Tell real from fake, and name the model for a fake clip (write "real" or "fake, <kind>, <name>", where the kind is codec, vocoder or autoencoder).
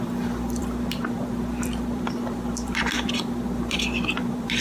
fake, vocoder, BigVGAN v2